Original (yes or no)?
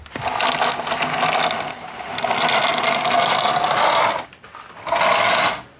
yes